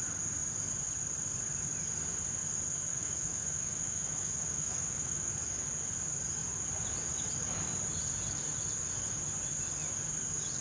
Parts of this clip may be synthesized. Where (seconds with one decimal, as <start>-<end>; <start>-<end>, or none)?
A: 2.9-5.3